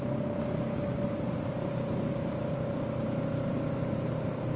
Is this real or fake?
real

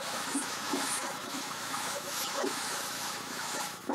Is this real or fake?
fake